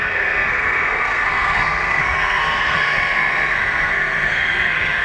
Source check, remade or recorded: remade